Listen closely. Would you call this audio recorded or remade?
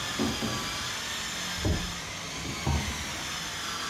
recorded